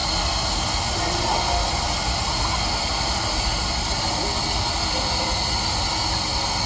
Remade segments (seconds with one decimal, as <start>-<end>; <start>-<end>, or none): none